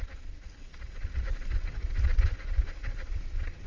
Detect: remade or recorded recorded